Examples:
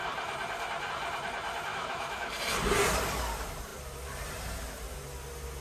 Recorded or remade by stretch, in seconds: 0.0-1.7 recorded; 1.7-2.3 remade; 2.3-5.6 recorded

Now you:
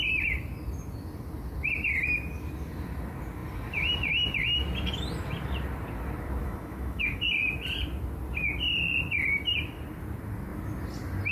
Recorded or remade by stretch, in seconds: 0.0-6.4 recorded; 6.4-7.2 remade; 7.2-11.3 recorded

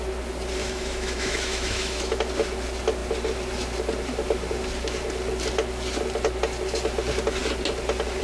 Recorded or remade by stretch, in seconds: 0.0-0.6 recorded; 0.6-2.3 remade; 2.3-8.2 recorded

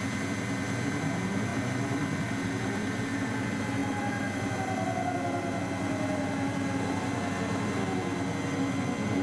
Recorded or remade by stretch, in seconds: 0.0-9.2 recorded

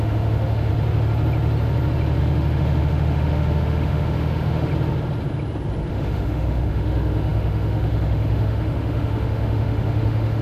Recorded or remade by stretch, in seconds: 0.0-0.7 remade; 0.7-2.2 recorded; 2.2-4.7 remade; 4.7-5.9 recorded; 5.9-10.4 remade

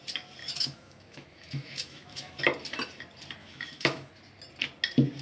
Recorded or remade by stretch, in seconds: 0.0-0.4 recorded; 0.4-2.4 remade; 2.4-3.4 recorded; 3.4-4.1 remade; 4.1-5.2 recorded

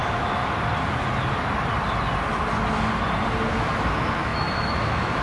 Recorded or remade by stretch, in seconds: 0.0-0.4 remade; 0.4-3.5 recorded; 3.5-5.2 remade

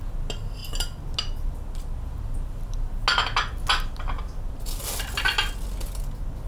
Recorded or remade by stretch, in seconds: 0.0-6.5 recorded